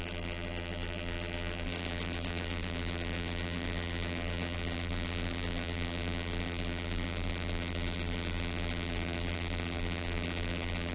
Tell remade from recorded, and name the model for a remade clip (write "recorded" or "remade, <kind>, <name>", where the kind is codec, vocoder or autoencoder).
remade, vocoder, BigVGAN v2